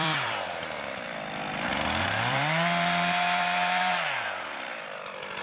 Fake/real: fake